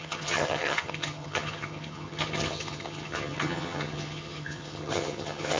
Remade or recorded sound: remade